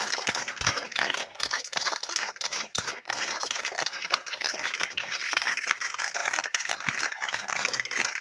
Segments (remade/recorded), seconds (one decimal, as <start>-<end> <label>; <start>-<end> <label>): 0.0-8.2 remade